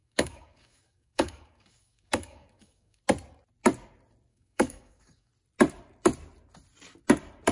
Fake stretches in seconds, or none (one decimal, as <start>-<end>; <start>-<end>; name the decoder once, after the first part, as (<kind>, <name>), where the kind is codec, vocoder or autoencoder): 0.0-3.0 (codec, DAC); 4.3-5.3